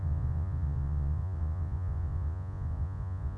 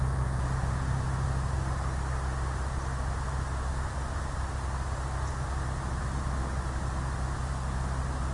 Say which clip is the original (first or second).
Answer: second